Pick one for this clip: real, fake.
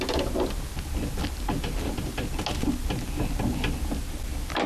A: real